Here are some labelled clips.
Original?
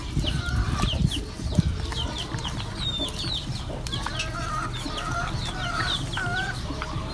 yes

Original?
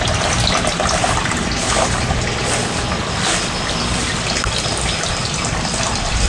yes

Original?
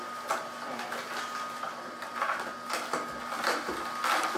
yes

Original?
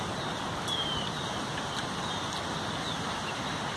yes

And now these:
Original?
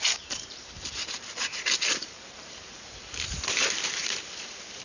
no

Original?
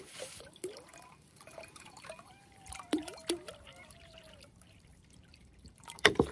no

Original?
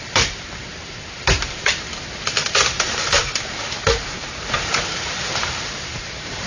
no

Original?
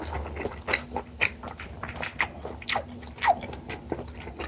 yes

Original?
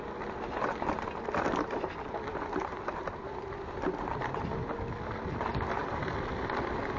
yes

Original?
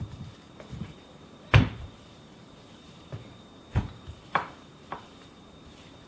no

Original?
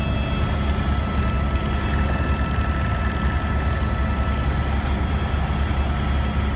yes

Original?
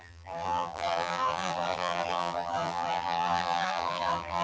no